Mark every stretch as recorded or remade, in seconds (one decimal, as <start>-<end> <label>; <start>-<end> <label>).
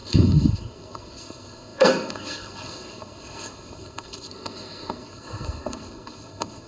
0.0-6.7 remade